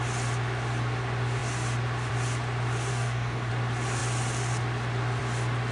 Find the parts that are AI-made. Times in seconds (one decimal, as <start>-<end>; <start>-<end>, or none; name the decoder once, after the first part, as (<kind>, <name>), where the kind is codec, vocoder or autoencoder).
2.9-3.5 (codec, DAC)